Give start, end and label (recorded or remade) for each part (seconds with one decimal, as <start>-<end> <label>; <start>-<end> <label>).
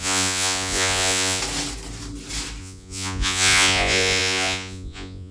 0.0-1.4 remade; 1.4-2.6 recorded; 2.6-5.3 remade